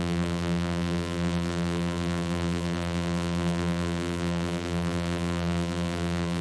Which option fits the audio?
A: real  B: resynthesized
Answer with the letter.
B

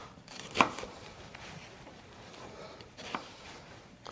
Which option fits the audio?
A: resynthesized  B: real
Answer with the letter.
A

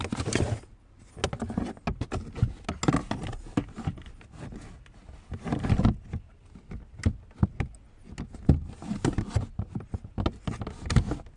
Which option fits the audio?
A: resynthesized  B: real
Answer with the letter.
B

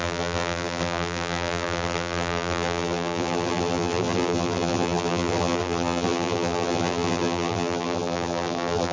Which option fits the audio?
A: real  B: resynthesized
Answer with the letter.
B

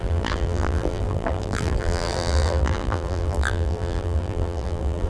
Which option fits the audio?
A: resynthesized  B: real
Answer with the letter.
A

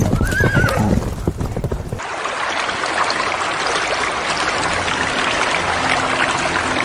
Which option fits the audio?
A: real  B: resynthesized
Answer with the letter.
A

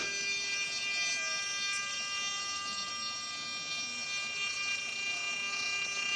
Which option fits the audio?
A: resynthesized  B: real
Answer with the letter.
B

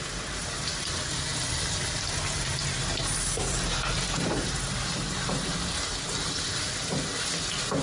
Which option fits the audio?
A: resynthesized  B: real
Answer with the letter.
A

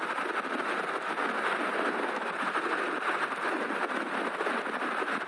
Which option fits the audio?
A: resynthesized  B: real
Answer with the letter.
B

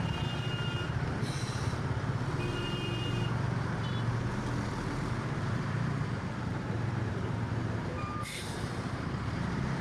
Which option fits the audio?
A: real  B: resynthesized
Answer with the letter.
B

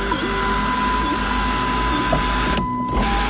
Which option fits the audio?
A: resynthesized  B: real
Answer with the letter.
B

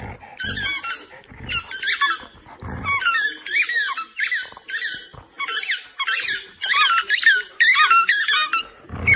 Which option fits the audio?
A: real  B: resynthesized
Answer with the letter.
A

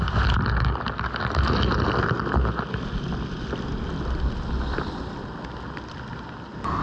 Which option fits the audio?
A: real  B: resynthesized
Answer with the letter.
A